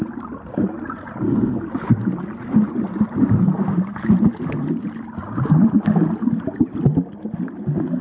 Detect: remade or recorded recorded